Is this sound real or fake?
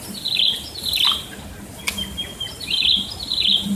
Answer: real